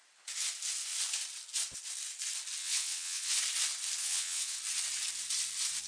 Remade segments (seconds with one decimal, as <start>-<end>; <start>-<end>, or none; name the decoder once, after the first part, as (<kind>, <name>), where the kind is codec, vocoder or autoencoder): 2.6-3.4 (vocoder, WaveNeXt); 4.0-4.6